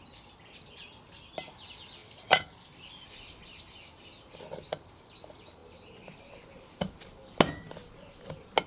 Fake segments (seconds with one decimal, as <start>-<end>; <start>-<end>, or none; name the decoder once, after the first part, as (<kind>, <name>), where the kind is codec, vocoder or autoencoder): none